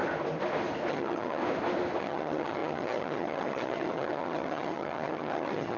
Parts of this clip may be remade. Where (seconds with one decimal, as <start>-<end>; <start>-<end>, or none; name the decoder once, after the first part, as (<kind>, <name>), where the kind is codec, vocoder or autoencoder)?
0.9-1.4 (vocoder, HiFi-GAN); 2.0-5.8

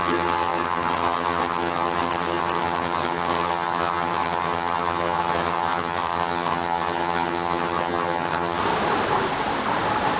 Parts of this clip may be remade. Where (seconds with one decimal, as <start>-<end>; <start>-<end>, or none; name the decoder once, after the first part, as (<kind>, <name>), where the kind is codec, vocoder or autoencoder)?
0.0-8.6 (vocoder, HiFi-GAN)

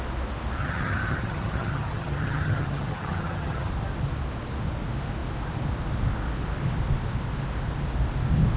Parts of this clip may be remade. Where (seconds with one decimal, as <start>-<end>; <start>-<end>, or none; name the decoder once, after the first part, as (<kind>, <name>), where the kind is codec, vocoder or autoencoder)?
0.6-3.7 (vocoder, HiFi-GAN)